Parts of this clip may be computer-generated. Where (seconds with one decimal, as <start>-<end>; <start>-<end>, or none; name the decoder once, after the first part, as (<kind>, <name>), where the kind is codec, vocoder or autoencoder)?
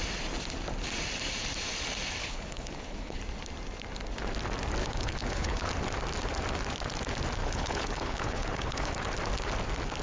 2.2-3.2 (codec, HILCodec); 4.8-5.7; 7.4-8.9